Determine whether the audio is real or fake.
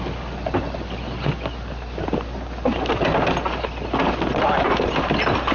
real